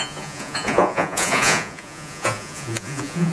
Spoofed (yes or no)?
yes